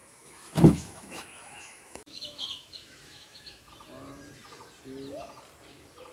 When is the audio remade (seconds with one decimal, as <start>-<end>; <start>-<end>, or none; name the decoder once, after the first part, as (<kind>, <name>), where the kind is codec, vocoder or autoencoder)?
0.0-3.7 (autoencoder, DAC-VAE)